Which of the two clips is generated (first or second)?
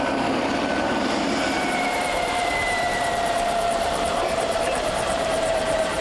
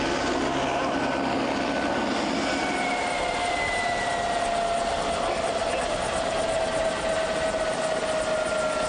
first